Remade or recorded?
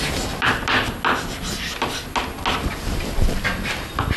recorded